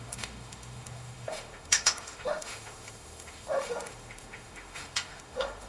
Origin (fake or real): fake